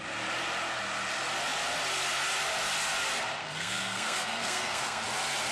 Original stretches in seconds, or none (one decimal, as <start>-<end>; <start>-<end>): 0.0-3.4; 5.0-5.5